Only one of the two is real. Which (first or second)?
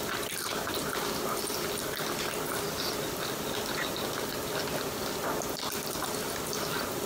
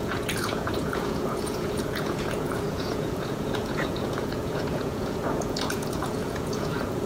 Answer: first